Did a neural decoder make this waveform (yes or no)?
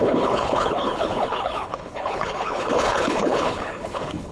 yes